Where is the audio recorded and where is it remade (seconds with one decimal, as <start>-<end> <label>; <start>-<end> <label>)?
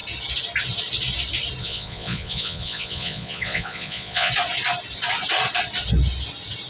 0.0-1.6 recorded; 1.6-4.3 remade; 4.3-6.7 recorded